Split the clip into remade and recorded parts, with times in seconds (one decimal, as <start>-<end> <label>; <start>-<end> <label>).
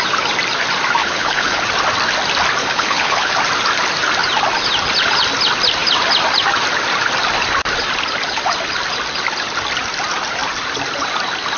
0.0-1.0 recorded; 1.0-1.6 remade; 1.6-2.6 recorded; 2.6-3.3 remade; 3.3-11.6 recorded